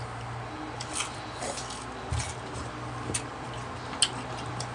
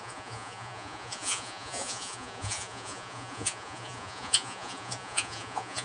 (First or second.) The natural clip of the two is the first